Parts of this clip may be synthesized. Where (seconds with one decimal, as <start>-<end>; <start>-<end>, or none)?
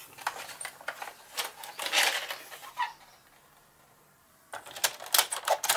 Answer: 0.0-4.8